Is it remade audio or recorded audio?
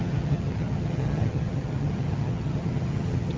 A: remade